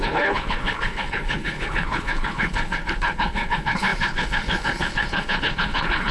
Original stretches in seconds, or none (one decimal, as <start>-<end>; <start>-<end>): none